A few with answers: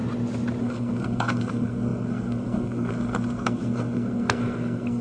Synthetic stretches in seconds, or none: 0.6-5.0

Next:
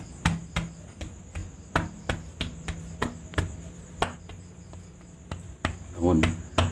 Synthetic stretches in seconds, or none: none

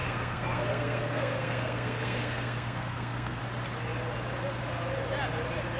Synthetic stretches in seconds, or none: 0.0-3.4

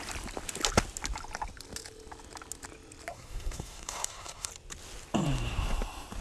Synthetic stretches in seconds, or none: 3.1-4.5